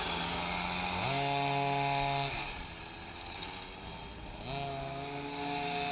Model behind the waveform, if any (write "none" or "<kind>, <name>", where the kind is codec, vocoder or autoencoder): none